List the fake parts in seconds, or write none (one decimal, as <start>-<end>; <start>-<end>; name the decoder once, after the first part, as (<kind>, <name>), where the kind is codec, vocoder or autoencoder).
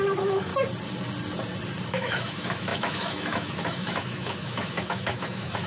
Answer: 0.0-0.5 (autoencoder, DAC-VAE); 1.9-5.7